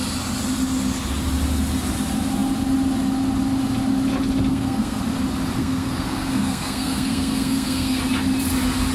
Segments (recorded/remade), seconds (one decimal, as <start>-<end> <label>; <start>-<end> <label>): 0.0-4.5 recorded; 4.5-5.0 remade; 5.0-5.6 recorded; 5.6-8.0 remade; 8.0-8.9 recorded